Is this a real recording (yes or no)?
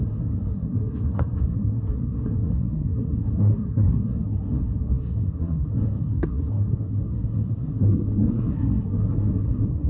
no